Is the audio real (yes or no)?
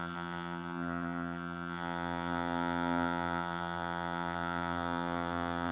no